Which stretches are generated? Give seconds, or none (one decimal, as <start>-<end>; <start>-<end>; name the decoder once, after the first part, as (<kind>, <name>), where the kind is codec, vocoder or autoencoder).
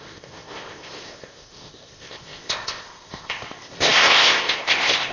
0.0-5.1 (codec, ZipCodec)